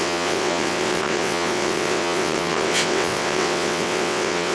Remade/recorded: remade